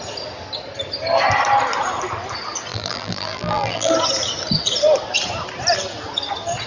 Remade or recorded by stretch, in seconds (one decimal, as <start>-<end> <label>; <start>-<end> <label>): 0.0-2.7 recorded; 2.7-3.9 remade; 3.9-6.7 recorded